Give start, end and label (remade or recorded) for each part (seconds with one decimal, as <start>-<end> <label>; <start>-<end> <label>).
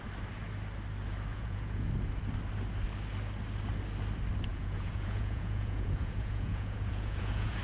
0.0-1.3 recorded; 1.3-1.9 remade; 1.9-4.5 recorded; 4.5-7.6 remade